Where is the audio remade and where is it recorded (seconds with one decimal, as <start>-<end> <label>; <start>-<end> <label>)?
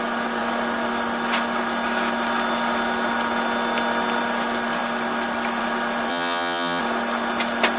0.0-6.1 recorded; 6.1-6.8 remade; 6.8-7.8 recorded